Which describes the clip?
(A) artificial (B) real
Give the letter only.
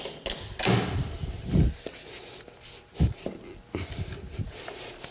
B